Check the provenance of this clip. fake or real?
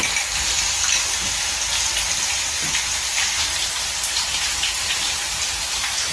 real